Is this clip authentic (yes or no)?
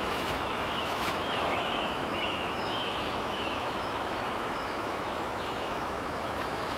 no